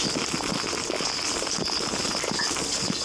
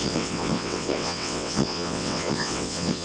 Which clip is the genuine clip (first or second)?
first